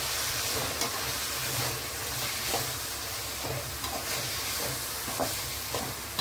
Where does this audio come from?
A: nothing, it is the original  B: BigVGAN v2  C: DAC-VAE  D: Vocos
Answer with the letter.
A